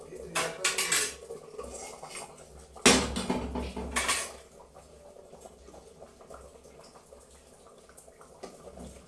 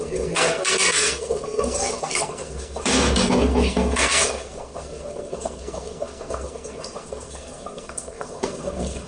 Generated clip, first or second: second